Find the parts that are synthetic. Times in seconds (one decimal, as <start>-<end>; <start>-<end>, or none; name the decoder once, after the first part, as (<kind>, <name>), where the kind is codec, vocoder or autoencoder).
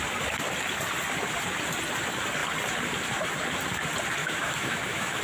4.2-5.2 (autoencoder, DAC-VAE)